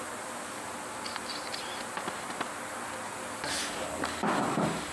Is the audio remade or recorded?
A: recorded